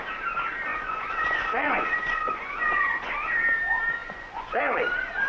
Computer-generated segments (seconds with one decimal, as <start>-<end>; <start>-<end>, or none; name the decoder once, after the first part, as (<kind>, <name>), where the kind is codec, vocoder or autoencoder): 0.7-3.1 (vocoder, Vocos); 4.0-4.6